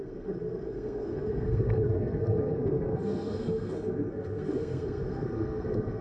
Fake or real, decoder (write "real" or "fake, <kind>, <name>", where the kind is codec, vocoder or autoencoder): fake, codec, SNAC